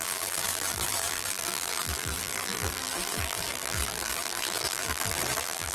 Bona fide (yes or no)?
no